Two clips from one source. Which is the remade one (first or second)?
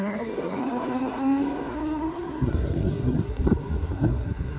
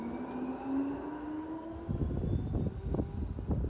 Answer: first